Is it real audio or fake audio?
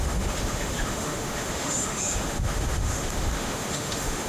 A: fake